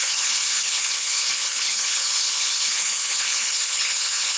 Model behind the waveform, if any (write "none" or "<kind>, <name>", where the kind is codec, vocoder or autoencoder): codec, HILCodec